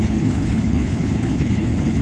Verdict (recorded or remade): remade